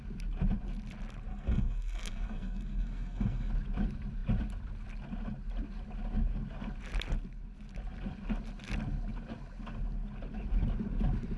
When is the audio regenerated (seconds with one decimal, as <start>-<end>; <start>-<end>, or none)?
1.3-3.5